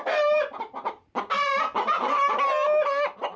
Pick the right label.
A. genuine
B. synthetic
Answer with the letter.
A